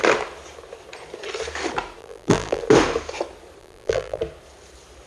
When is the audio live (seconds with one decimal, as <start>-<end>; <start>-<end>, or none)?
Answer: 0.0-2.0; 2.6-3.6; 4.2-5.1